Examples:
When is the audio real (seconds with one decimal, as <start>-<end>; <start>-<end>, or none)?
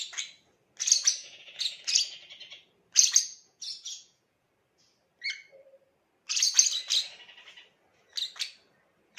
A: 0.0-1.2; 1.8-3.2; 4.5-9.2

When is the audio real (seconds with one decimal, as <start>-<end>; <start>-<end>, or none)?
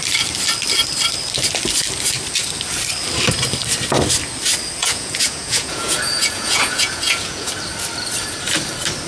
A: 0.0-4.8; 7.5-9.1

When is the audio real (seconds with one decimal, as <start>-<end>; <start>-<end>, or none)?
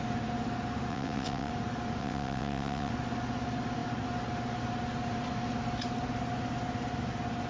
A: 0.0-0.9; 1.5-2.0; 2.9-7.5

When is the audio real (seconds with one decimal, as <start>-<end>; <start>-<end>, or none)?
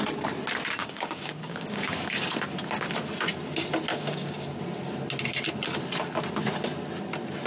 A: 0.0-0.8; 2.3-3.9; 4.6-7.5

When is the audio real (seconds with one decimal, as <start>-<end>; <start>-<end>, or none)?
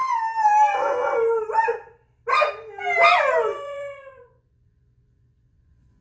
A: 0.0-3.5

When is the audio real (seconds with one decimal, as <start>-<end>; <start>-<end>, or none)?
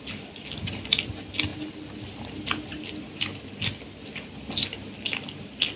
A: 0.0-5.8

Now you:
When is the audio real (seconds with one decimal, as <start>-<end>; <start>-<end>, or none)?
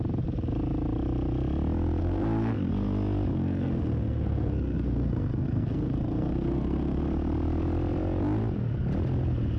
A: 0.0-2.0; 2.7-3.3; 7.0-9.6